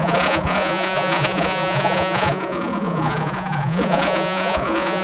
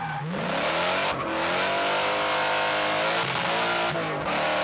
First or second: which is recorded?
second